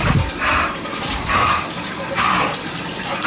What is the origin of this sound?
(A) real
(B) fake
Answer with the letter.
B